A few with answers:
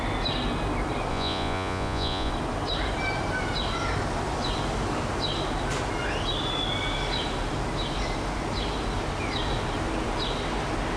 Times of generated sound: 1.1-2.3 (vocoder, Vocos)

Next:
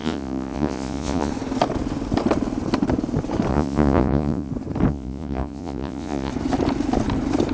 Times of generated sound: 0.0-1.3 (vocoder, Vocos); 3.5-4.5; 4.9-6.3

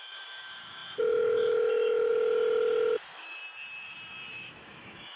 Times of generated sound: 0.0-2.1 (autoencoder, DAC-VAE); 3.0-3.4; 4.3-5.2

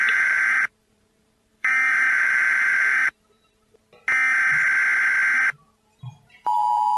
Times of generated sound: 0.0-3.8 (vocoder, BigVGAN v2); 6.1-7.0

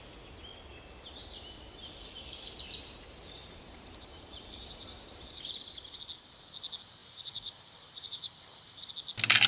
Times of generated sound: 1.2-6.0 (vocoder, BigVGAN v2); 7.0-8.9

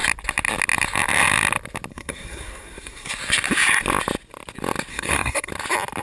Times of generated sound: 1.9-3.1 (codec, SNAC); 4.9-5.5

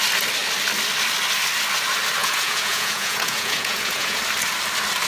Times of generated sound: 2.2-4.2 (vocoder, Vocos)